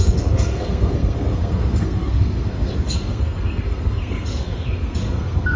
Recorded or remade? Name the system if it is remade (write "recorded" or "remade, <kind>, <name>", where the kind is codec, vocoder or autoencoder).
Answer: remade, codec, SNAC